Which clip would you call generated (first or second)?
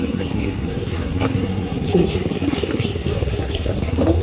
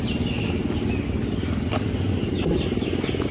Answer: first